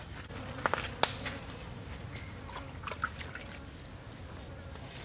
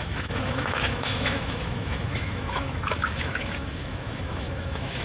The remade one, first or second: second